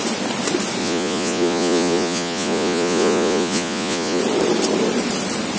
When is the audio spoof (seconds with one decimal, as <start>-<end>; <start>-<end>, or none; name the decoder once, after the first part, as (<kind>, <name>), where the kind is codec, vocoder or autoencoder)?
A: 0.8-4.2 (vocoder, Vocos)